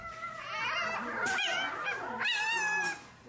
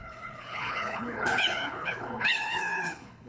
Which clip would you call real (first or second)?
first